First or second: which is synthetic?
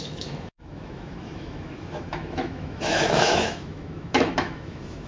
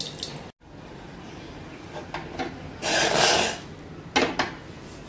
first